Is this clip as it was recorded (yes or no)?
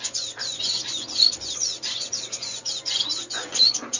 no